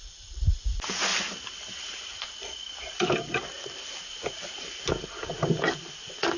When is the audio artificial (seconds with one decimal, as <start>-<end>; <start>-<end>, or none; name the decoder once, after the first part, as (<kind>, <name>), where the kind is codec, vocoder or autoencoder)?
none